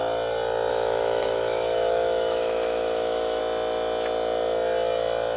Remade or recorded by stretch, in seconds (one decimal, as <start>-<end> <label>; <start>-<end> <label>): 0.0-0.7 recorded; 0.7-3.4 remade; 3.4-5.4 recorded

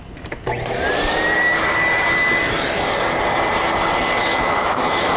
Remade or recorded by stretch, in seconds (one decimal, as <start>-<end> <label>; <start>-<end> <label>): 0.0-4.2 recorded; 4.2-5.2 remade

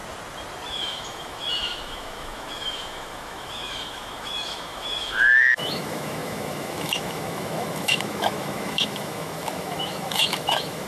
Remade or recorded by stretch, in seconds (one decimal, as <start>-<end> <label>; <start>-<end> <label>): 0.0-0.7 recorded; 0.7-10.9 remade

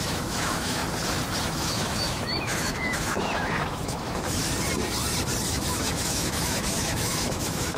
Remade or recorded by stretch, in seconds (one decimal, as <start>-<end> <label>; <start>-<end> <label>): 0.0-0.8 remade; 0.8-1.4 recorded; 1.4-4.4 remade; 4.4-5.5 recorded; 5.5-7.8 remade

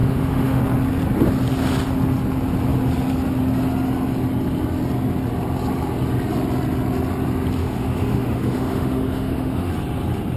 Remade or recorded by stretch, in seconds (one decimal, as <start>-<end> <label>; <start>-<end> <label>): 0.0-0.6 remade; 0.6-7.6 recorded; 7.6-9.7 remade; 9.7-10.4 recorded